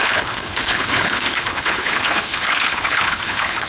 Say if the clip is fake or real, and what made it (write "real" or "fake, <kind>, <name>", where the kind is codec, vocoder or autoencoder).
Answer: fake, codec, HILCodec